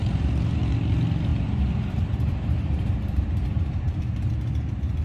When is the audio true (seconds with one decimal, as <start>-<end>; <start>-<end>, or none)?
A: 0.6-1.3; 4.3-5.0